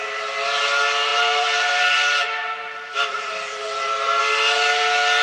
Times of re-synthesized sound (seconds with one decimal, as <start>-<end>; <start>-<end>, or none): 1.1-4.2

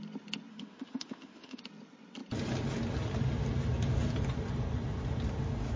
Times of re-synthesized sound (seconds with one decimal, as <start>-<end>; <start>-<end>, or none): 0.5-1.6

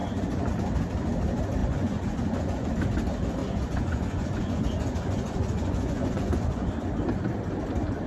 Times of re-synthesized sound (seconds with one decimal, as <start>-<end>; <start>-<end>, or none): 0.0-0.5; 1.6-2.7; 3.4-6.7

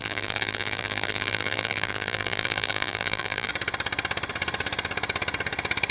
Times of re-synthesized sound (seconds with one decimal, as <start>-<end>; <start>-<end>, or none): 0.0-3.5

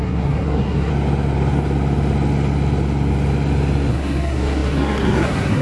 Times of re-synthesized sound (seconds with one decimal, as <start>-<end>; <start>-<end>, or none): 0.0-0.9; 3.9-5.6